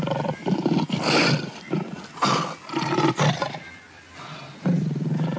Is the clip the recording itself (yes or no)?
yes